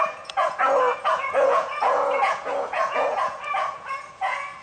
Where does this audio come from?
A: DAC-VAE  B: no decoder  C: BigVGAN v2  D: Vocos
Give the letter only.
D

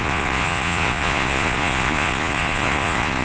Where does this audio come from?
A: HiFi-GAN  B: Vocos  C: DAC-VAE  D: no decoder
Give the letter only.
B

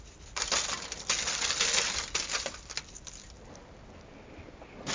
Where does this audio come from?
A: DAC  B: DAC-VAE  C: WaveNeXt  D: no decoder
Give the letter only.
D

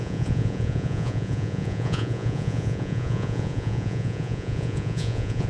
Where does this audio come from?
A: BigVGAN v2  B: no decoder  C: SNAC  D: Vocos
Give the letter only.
D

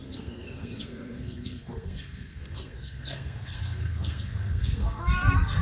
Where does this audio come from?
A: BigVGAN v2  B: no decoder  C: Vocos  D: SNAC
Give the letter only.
D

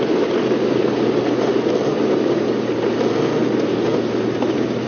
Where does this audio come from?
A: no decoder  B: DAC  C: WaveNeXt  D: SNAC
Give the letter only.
A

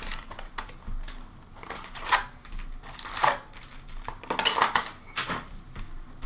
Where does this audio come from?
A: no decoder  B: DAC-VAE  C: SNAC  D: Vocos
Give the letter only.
A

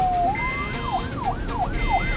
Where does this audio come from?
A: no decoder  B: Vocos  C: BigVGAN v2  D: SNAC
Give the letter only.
A